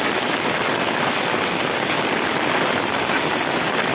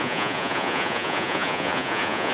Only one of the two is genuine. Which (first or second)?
first